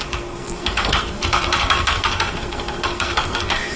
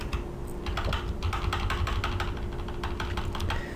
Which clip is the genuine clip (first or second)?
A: second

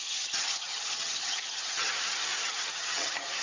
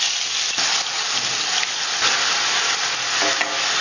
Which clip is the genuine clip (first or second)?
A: second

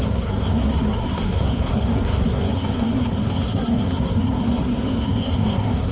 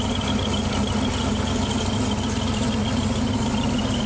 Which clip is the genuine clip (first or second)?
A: second